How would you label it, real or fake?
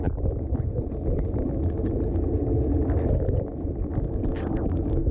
real